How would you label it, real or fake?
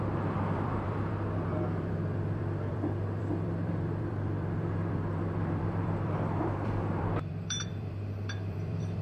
fake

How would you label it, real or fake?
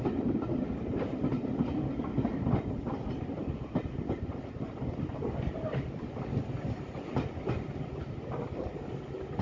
real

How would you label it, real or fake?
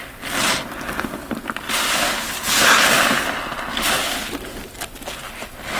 real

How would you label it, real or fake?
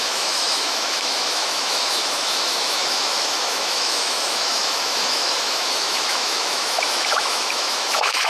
fake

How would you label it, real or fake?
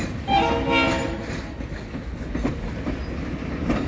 real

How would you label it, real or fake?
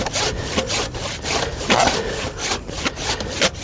real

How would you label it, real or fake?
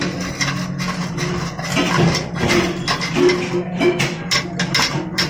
real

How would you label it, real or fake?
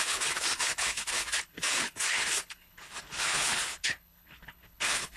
fake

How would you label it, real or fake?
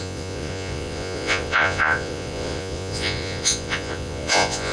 fake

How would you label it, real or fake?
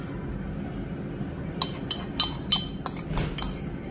real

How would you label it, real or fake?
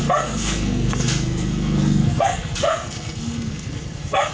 fake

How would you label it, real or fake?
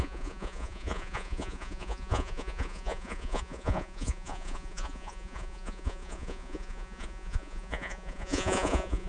fake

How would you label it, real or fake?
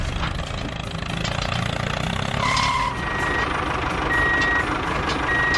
real